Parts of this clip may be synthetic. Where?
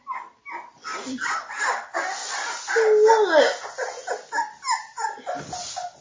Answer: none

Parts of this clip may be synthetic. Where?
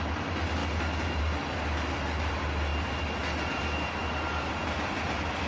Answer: 0.0-2.7 (vocoder, BigVGAN v2); 3.5-5.5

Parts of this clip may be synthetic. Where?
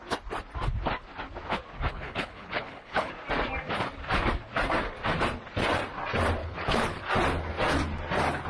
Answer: 1.9-3.1 (codec, HILCodec); 6.4-7.0